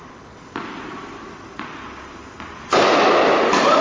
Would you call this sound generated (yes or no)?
no